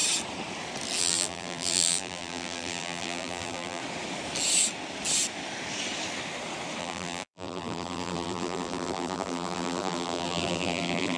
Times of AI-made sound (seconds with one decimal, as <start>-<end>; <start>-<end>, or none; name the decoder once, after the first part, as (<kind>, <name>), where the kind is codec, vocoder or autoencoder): 1.0-3.8 (vocoder, BigVGAN v2); 6.8-11.2